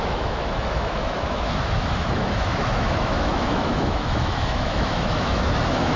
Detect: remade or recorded remade